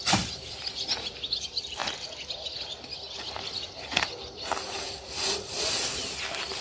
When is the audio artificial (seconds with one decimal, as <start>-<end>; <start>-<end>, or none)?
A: none